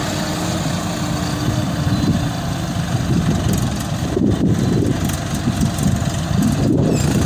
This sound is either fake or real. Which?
real